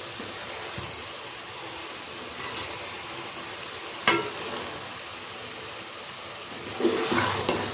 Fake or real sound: fake